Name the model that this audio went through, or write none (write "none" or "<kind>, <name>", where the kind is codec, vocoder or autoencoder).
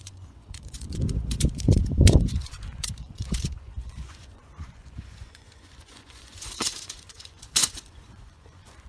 vocoder, Vocos